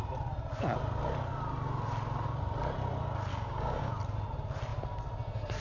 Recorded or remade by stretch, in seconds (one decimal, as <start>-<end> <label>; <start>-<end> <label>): 0.0-3.3 recorded; 3.3-3.9 remade; 3.9-5.6 recorded